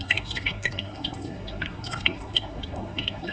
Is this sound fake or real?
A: fake